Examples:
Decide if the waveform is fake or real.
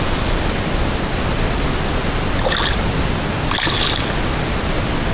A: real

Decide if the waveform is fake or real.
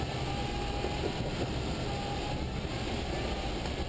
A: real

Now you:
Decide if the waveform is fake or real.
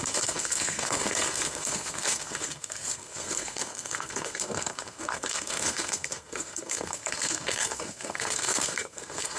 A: fake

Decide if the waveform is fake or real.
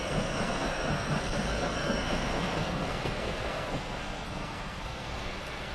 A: fake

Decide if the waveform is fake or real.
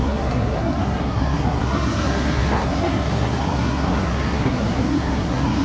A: fake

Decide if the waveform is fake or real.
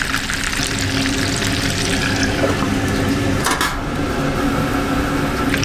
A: real